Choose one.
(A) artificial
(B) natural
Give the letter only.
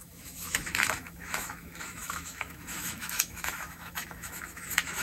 A